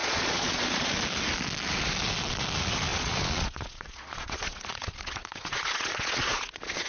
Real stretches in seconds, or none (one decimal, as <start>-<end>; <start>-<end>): 0.9-2.9